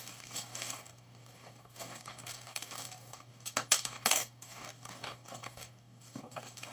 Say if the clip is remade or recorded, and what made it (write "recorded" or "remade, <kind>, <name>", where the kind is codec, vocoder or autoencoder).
remade, codec, DAC